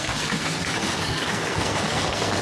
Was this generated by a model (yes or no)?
yes